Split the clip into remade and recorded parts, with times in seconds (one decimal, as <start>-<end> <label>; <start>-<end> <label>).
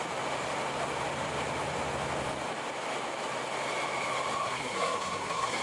0.0-4.4 recorded; 4.4-5.6 remade